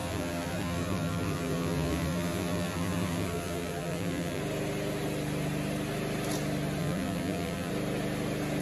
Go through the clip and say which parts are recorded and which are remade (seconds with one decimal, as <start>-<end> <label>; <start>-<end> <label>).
0.0-4.4 remade; 4.4-6.8 recorded; 6.8-7.7 remade; 7.7-8.6 recorded

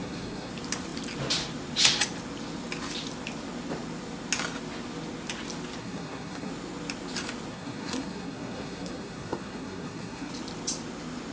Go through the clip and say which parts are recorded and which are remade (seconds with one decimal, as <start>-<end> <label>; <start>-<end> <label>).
0.0-0.5 remade; 0.5-5.8 recorded; 5.8-6.5 remade; 6.5-7.5 recorded; 7.5-10.3 remade; 10.3-11.3 recorded

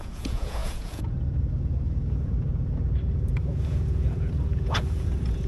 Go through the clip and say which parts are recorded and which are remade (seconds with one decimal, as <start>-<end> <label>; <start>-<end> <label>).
0.0-5.5 remade